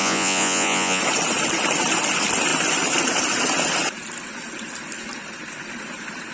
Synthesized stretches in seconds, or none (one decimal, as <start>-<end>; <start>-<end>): 0.0-1.0